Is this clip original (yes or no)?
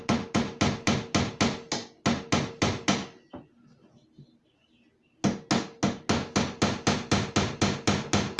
yes